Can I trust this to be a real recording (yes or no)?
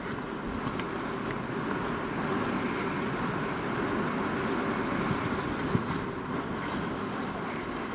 yes